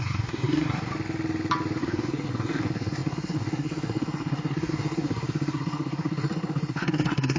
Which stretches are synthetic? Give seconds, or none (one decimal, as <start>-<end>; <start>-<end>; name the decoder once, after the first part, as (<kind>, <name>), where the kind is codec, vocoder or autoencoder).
0.0-0.9 (codec, SNAC); 1.8-7.4